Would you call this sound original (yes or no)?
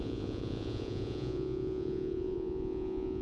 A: no